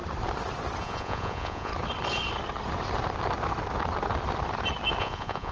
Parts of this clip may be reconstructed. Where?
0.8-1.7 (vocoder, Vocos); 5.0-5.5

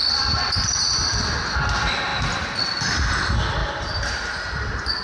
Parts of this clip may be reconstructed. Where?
0.0-1.2 (vocoder, BigVGAN v2); 3.6-5.0

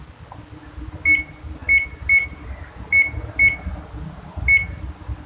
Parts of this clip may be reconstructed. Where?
none

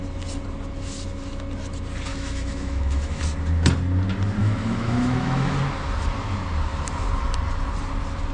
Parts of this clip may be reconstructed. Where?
2.1-3.2 (autoencoder, DAC-VAE); 4.4-5.6

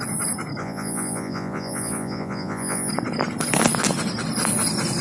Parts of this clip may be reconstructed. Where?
0.6-2.9 (vocoder, Vocos)

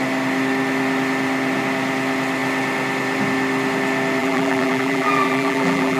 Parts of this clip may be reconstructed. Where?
4.2-6.0 (vocoder, BigVGAN v2)

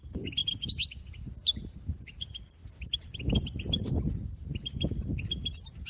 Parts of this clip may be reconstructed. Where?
none